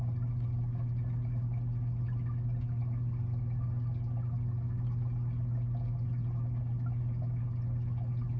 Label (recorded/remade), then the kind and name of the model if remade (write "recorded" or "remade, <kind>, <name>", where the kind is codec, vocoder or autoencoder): recorded